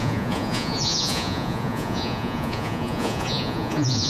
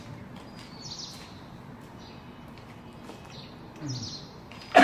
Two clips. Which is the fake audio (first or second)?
first